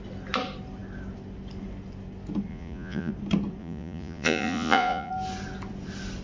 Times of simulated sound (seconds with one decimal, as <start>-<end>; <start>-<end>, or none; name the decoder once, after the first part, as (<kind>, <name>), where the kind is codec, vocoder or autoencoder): 2.5-3.1 (vocoder, Vocos); 3.6-5.1